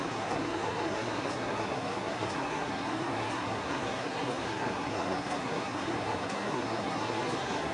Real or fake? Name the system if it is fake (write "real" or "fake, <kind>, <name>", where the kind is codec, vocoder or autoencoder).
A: fake, codec, SNAC